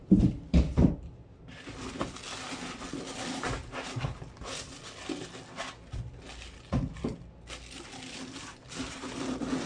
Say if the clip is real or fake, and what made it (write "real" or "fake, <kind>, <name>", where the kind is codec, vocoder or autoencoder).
real